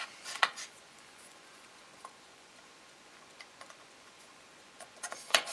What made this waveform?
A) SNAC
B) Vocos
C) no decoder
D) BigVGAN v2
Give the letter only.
B